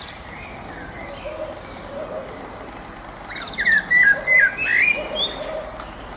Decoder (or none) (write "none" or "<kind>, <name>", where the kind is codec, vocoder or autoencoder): none